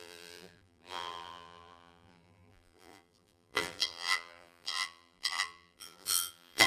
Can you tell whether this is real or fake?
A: fake